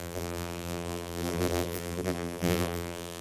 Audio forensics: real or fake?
fake